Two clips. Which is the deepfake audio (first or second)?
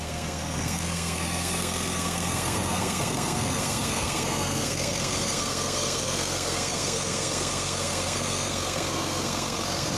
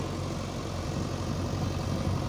first